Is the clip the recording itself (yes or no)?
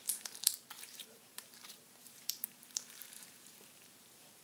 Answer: no